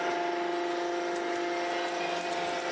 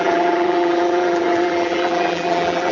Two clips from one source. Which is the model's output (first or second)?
second